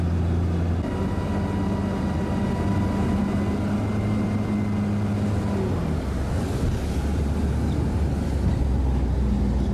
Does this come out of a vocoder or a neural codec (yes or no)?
no